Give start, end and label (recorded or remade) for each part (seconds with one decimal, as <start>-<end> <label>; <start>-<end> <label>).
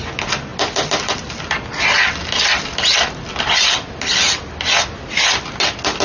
0.0-6.0 recorded